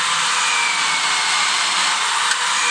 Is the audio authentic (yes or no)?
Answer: no